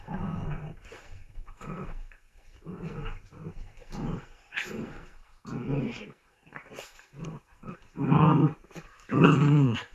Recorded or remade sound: remade